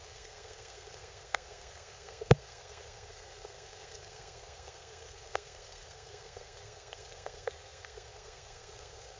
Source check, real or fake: fake